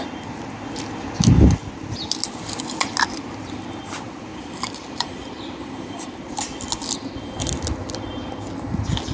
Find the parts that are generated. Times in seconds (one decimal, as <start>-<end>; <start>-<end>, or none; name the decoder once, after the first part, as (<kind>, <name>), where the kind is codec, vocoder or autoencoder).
4.3-6.1 (vocoder, BigVGAN v2)